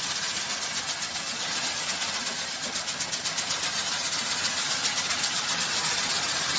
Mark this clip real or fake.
real